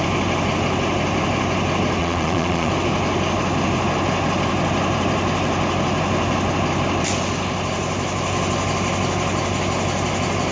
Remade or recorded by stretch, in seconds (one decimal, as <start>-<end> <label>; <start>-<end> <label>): 0.0-2.0 recorded; 2.0-2.7 remade; 2.7-10.5 recorded